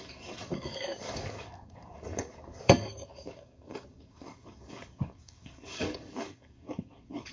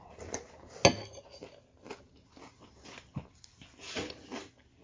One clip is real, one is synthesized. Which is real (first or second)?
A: second